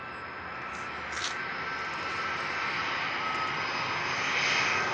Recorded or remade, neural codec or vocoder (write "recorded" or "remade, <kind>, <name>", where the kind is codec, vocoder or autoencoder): recorded